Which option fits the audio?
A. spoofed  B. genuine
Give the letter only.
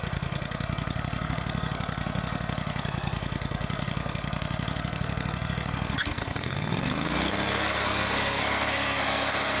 A